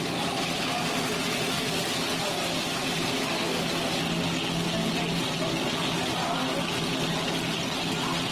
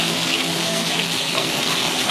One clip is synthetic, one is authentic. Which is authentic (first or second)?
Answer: first